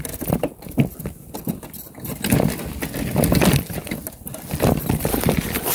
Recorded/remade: recorded